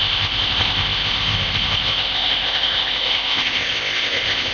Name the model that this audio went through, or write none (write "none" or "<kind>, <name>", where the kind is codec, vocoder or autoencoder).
codec, ZipCodec